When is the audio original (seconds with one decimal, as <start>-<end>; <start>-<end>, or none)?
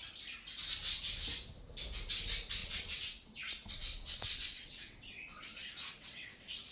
0.0-2.6